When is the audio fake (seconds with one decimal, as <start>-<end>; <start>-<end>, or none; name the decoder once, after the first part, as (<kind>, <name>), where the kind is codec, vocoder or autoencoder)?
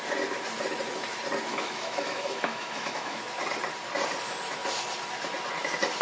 1.5-3.2 (autoencoder, DAC-VAE)